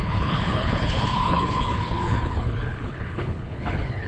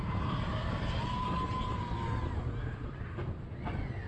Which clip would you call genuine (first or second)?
second